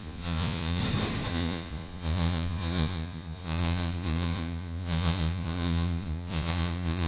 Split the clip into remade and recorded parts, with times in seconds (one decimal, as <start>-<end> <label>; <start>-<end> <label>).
0.0-0.8 remade; 0.8-1.3 recorded; 1.3-7.1 remade